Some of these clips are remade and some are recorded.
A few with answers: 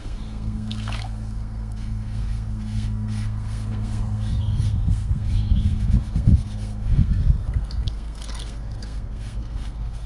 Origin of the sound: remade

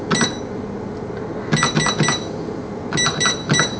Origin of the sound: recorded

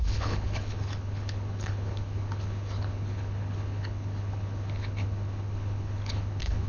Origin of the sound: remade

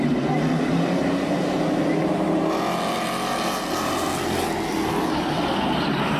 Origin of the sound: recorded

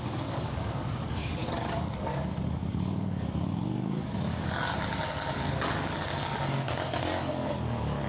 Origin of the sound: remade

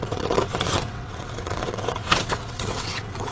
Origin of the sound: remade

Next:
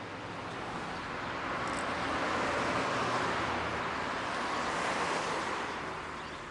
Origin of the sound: recorded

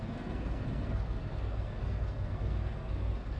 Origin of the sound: remade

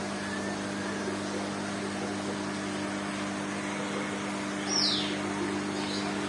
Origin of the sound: recorded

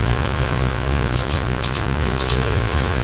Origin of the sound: remade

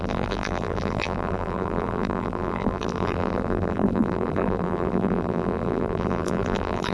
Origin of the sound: remade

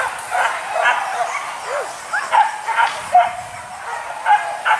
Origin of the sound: recorded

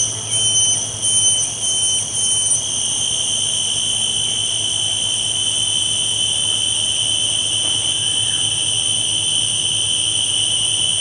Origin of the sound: recorded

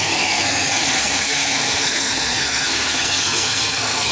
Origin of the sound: remade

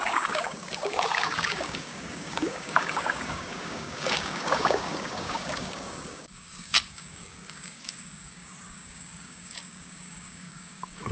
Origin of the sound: remade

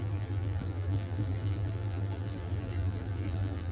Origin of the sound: remade